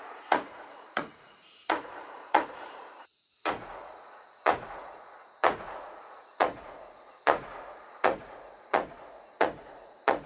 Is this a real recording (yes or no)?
no